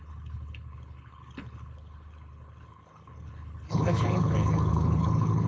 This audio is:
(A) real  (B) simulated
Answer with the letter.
B